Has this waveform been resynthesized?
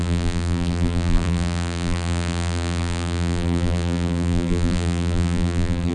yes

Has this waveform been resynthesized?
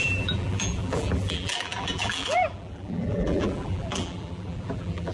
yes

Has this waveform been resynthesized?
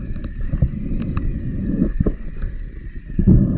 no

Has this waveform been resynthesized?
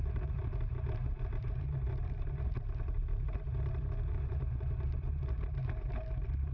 yes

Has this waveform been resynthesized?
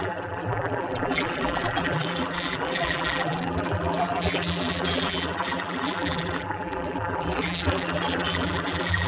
yes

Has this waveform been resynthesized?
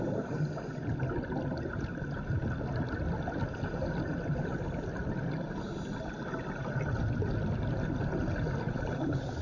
no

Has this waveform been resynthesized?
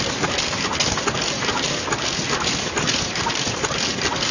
no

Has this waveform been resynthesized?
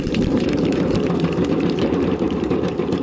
yes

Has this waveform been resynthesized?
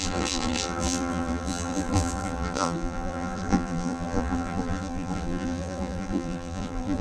yes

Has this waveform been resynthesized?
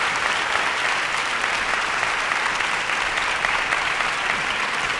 yes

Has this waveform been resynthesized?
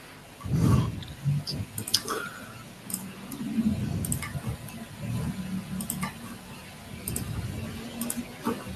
no